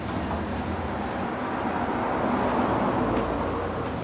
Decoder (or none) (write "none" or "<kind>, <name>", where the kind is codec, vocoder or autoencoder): none